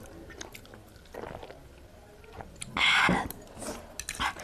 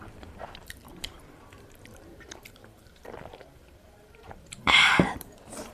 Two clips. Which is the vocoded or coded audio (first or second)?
second